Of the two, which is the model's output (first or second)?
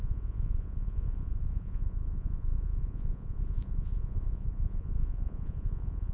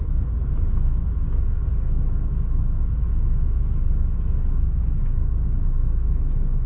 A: first